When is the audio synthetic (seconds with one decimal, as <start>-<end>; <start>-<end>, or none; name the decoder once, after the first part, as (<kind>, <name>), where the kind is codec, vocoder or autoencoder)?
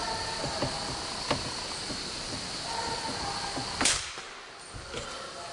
none